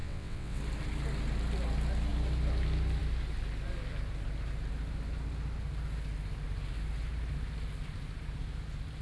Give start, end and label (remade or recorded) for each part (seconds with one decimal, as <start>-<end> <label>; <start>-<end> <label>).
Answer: 0.0-0.6 remade; 0.6-9.0 recorded